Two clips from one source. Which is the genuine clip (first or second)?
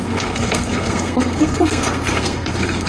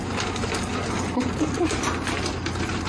second